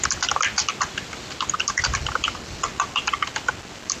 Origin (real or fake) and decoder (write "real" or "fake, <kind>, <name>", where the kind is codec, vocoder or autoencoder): real